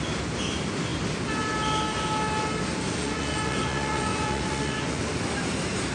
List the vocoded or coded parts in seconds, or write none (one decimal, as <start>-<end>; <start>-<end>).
3.0-5.0